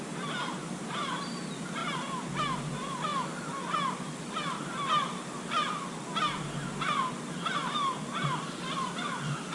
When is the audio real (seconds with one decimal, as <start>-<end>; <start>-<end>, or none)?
0.0-9.5